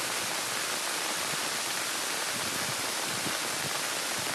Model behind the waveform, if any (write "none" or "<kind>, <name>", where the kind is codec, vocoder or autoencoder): none